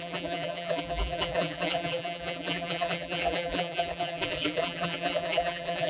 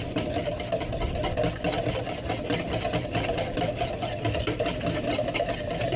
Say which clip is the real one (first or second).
second